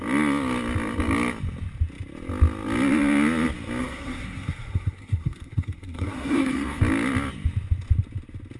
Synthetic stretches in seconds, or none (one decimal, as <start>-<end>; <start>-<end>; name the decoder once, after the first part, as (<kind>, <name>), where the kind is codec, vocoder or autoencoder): 3.8-6.8 (codec, SNAC)